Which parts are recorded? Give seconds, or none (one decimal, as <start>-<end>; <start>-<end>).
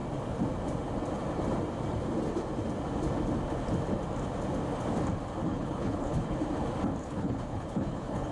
0.0-5.4; 6.4-7.0